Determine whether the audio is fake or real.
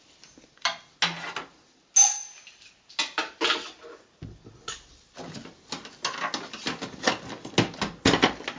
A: real